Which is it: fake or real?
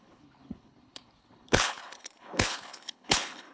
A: fake